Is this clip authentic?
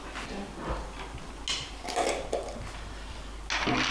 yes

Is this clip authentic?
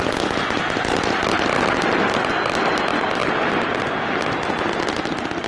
yes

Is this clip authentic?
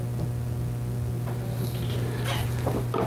yes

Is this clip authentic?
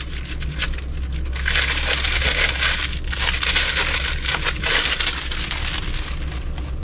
yes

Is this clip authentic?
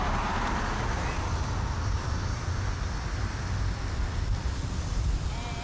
yes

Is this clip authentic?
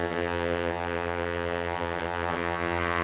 no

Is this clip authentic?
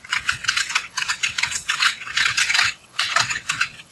no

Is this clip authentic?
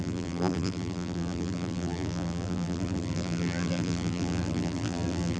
no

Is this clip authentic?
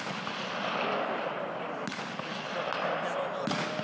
yes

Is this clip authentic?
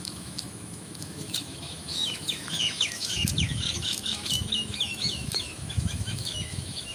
no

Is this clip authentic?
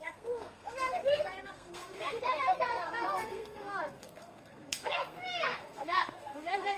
no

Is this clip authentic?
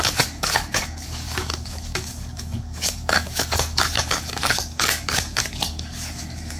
no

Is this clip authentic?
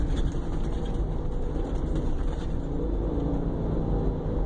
yes